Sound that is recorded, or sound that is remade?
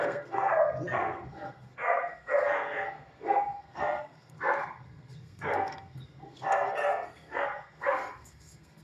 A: remade